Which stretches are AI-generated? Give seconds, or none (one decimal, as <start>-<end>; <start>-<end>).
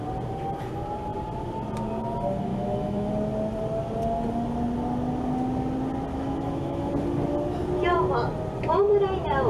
2.5-3.1; 6.1-6.9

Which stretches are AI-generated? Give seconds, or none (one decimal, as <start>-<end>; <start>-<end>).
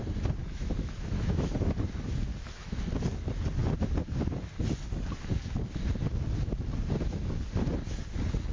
0.4-1.5; 2.3-2.8